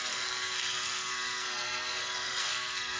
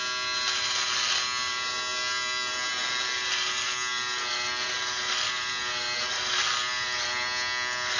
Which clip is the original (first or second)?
second